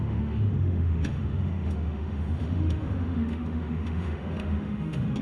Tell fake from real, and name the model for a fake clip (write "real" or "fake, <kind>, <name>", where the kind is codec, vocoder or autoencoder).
fake, autoencoder, DAC-VAE